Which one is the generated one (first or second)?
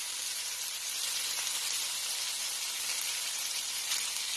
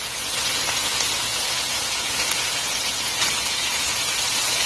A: second